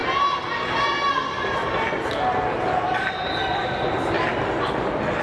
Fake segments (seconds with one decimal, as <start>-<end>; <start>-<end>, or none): none